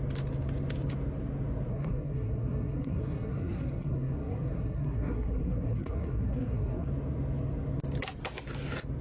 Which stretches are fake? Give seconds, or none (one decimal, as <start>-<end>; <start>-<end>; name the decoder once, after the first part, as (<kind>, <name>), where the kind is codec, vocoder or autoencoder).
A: 1.7-6.9 (codec, SNAC)